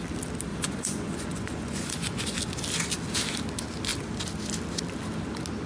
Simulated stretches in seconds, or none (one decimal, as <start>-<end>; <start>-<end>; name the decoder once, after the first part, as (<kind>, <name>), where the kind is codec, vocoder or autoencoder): 0.5-2.4 (vocoder, Vocos)